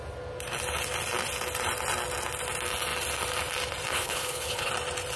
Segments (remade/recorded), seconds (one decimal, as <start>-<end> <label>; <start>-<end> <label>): 0.0-3.9 recorded; 3.9-4.7 remade; 4.7-5.2 recorded